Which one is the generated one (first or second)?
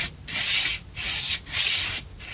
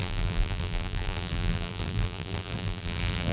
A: second